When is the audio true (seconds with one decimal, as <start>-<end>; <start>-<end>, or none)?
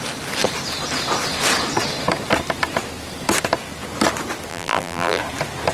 0.0-4.5; 5.2-5.7